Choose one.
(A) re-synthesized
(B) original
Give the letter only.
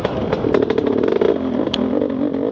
B